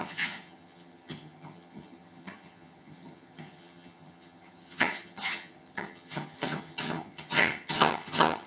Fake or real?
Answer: fake